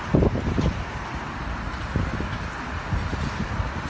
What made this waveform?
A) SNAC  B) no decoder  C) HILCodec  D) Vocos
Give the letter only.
B